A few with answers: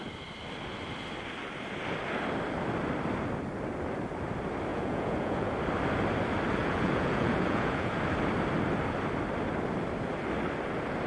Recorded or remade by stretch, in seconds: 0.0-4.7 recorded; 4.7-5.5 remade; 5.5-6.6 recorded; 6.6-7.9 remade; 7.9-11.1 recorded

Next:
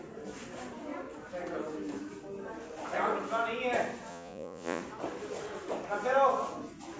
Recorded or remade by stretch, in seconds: 0.0-4.1 recorded; 4.1-4.8 remade; 4.8-7.0 recorded

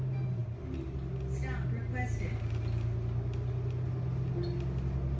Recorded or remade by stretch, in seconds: 0.0-5.2 recorded

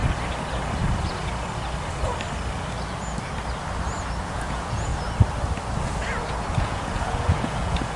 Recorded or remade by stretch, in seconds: 0.0-4.2 recorded; 4.2-4.9 remade; 4.9-6.5 recorded; 6.5-8.0 remade